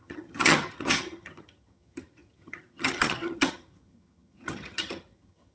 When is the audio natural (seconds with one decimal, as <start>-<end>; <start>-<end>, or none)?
none